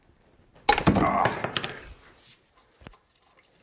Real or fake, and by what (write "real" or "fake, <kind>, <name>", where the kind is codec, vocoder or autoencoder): real